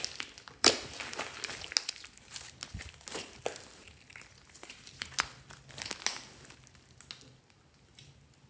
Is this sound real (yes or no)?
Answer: yes